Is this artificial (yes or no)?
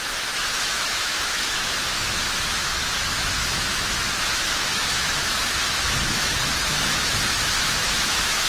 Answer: yes